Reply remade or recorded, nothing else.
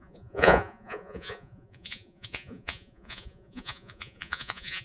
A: remade